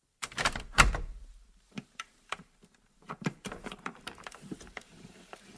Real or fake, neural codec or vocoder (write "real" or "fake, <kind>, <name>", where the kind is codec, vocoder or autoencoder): fake, vocoder, BigVGAN v2